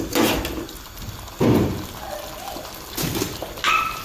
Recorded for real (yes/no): yes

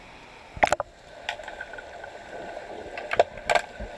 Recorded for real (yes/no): yes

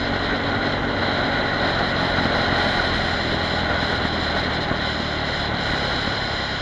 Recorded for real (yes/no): yes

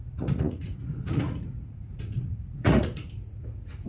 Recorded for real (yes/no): no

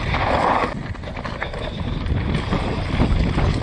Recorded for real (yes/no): yes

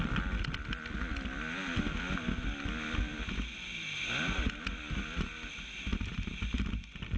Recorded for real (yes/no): yes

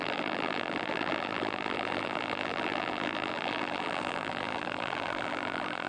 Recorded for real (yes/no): no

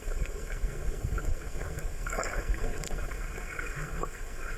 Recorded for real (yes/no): no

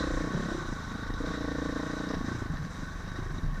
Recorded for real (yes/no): yes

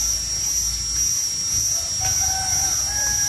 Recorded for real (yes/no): yes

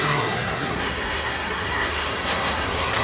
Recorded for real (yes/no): no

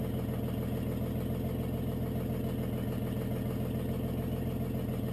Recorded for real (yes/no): yes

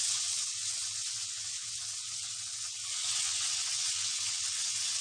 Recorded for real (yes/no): no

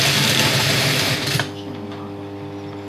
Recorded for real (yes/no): yes